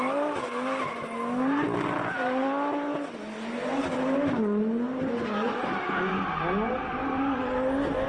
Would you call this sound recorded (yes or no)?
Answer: yes